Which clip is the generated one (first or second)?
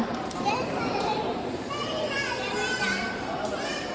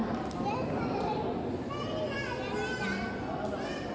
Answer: first